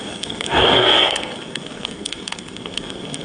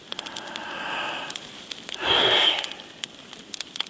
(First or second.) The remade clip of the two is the first